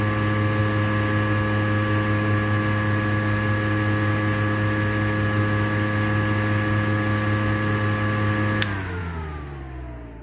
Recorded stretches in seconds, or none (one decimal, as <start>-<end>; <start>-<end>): 0.0-10.2